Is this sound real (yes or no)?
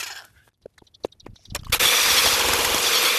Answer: yes